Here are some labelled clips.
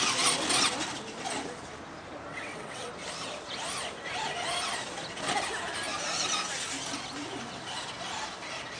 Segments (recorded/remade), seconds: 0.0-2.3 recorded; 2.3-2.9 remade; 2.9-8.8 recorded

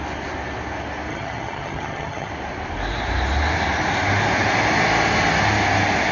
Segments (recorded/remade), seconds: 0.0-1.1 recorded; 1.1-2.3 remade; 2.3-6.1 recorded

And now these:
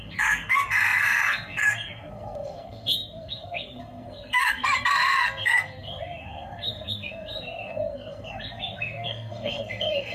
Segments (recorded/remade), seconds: 0.0-10.1 remade

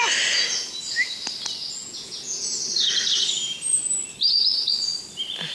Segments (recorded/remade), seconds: 0.0-1.8 recorded; 1.8-2.6 remade; 2.6-5.5 recorded

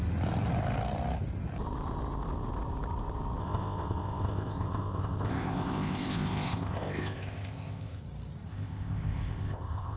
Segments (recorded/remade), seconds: 0.0-3.4 recorded; 3.4-8.0 remade; 8.0-8.5 recorded; 8.5-10.0 remade

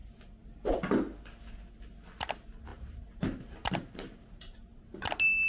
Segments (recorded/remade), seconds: 0.0-0.8 remade; 0.8-2.7 recorded; 2.7-5.1 remade; 5.1-5.5 recorded

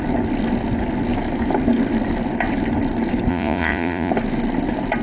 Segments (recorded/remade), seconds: 0.0-3.3 recorded; 3.3-4.1 remade; 4.1-5.0 recorded

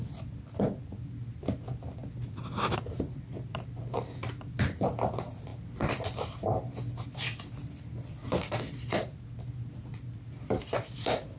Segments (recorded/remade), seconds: 0.0-11.4 recorded